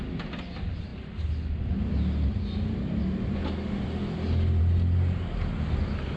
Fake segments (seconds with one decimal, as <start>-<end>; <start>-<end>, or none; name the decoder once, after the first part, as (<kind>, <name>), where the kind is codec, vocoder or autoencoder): none